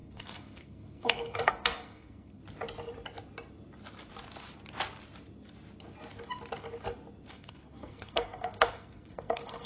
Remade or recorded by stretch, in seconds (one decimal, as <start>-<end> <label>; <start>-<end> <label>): 0.0-2.4 remade; 2.4-7.3 recorded; 7.3-9.7 remade